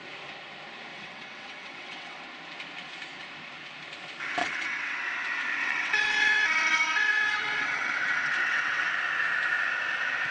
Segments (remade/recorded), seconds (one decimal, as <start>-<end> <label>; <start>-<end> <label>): 0.0-0.9 recorded; 0.9-2.2 remade; 2.2-4.4 recorded; 4.4-5.0 remade; 5.0-5.6 recorded; 5.6-8.9 remade; 8.9-10.3 recorded